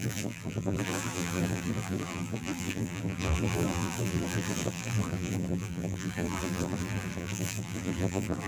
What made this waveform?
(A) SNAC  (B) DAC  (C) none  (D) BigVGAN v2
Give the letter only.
D